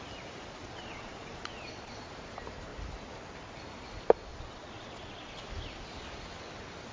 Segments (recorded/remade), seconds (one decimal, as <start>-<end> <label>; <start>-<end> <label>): 0.0-0.6 recorded; 0.6-2.1 remade; 2.1-4.3 recorded; 4.3-5.4 remade; 5.4-6.9 recorded